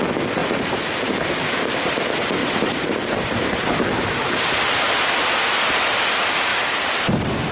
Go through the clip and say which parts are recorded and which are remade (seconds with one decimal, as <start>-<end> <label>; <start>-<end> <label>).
0.0-0.4 recorded; 0.4-1.1 remade; 1.1-2.4 recorded; 2.4-4.3 remade; 4.3-6.5 recorded; 6.5-7.5 remade